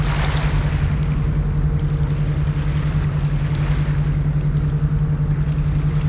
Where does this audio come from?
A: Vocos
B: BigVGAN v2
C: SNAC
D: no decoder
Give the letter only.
D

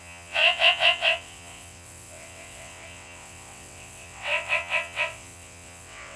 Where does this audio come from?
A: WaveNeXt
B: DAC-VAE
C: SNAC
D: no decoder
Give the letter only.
A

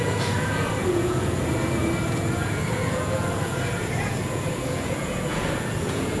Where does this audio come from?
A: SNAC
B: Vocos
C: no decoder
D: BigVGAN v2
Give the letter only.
B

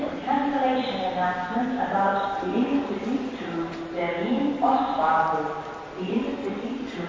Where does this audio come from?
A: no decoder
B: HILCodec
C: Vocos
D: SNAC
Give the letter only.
A